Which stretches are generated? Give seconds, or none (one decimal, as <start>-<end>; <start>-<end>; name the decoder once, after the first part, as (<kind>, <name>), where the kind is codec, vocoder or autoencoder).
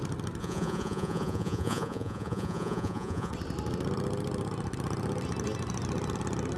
0.4-3.3 (vocoder, Vocos)